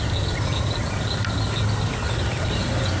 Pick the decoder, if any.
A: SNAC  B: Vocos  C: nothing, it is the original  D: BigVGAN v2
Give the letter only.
C